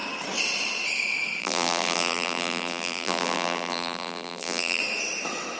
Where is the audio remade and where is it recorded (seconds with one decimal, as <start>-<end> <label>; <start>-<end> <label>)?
0.0-1.4 recorded; 1.4-4.8 remade; 4.8-5.6 recorded